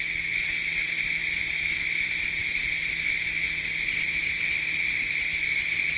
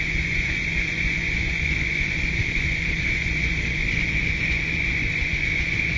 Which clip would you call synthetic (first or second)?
second